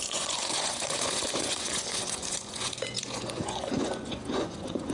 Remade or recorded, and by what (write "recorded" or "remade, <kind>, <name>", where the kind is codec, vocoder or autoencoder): remade, vocoder, Vocos